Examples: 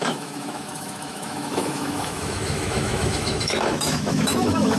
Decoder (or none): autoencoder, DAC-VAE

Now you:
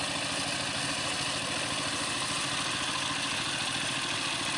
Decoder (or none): none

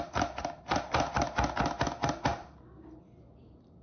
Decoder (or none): none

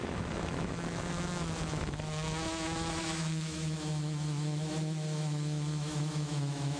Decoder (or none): autoencoder, DAC-VAE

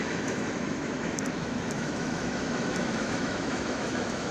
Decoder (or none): autoencoder, DAC-VAE